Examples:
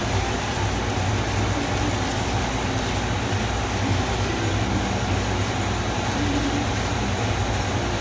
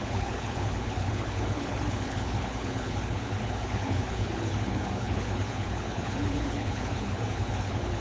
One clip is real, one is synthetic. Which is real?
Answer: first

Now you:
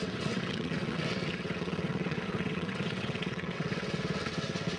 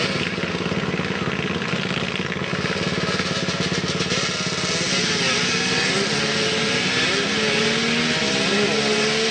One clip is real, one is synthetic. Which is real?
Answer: second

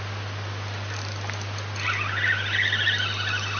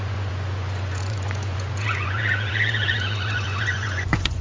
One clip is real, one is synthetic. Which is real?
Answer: first